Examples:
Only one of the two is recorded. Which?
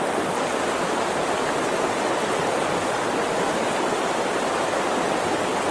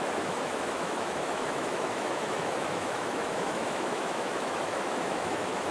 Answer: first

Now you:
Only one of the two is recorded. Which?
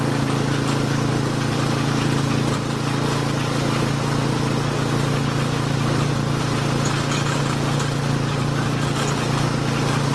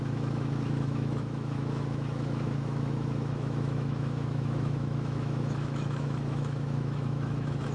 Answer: first